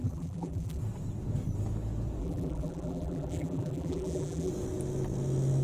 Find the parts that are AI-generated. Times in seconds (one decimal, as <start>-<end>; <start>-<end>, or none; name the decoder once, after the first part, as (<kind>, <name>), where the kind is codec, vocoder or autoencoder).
0.0-0.8 (vocoder, BigVGAN v2); 2.2-4.5